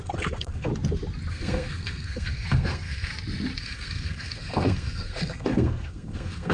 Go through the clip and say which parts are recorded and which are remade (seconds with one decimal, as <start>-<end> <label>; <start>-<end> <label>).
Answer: 0.0-0.7 remade; 0.7-1.3 recorded; 1.3-3.1 remade; 3.1-3.6 recorded; 3.6-6.5 remade